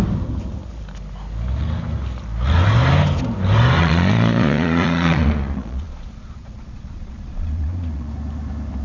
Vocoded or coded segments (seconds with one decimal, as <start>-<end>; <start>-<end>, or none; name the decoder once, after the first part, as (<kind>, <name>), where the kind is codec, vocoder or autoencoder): 3.8-8.1 (vocoder, Vocos)